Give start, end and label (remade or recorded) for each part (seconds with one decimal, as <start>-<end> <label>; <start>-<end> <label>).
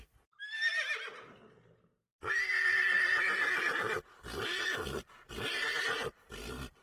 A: 0.0-6.8 recorded